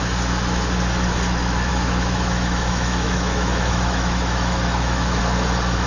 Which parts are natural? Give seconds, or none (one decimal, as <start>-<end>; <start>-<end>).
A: 0.0-1.7; 5.2-5.9